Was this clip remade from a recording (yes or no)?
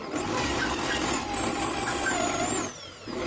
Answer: no